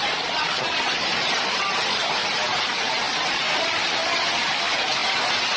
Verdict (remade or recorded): recorded